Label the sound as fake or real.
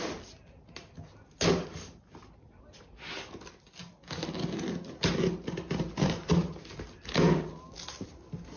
real